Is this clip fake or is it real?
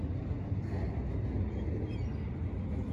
real